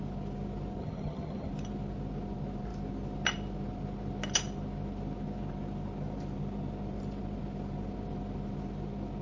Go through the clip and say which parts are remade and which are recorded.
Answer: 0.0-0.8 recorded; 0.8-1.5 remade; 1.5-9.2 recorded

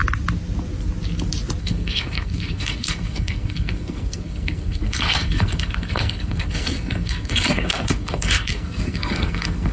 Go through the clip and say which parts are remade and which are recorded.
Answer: 0.0-1.6 recorded; 1.6-9.7 remade

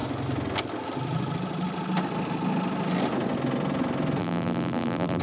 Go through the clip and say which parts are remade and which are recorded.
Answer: 0.0-4.2 recorded; 4.2-5.2 remade

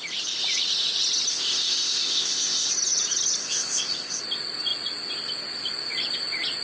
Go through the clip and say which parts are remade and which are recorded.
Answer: 0.0-1.3 recorded; 1.3-2.7 remade; 2.7-3.4 recorded; 3.4-4.2 remade; 4.2-6.6 recorded

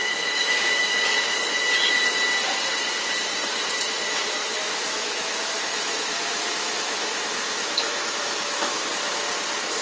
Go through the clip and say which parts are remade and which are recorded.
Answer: 0.0-1.7 remade; 1.7-4.4 recorded; 4.4-8.9 remade; 8.9-9.8 recorded

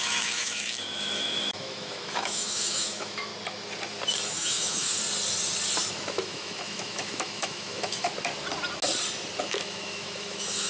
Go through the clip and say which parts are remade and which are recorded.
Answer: 0.0-3.3 remade; 3.3-4.3 recorded; 4.3-5.0 remade; 5.0-5.9 recorded; 5.9-8.1 remade; 8.1-9.4 recorded; 9.4-10.7 remade

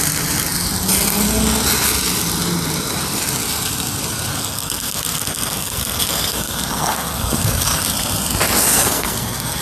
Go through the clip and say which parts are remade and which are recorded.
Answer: 0.0-4.3 recorded; 4.3-7.8 remade; 7.8-8.7 recorded; 8.7-9.6 remade

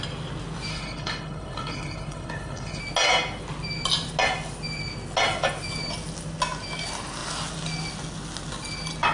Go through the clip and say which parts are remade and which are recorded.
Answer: 0.0-0.7 recorded; 0.7-2.8 remade; 2.8-9.1 recorded